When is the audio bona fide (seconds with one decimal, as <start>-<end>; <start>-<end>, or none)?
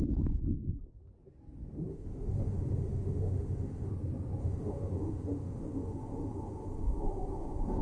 0.0-1.9; 3.9-4.4